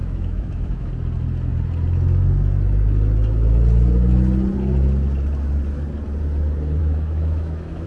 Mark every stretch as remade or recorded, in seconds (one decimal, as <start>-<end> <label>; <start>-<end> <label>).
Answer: 0.0-0.9 remade; 0.9-6.8 recorded; 6.8-7.9 remade